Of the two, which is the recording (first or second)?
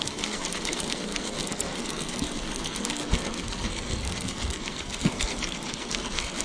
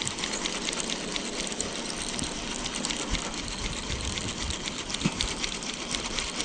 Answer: second